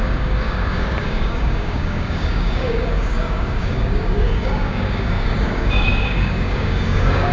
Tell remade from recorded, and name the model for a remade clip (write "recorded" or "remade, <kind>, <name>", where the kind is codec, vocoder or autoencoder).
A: remade, codec, DAC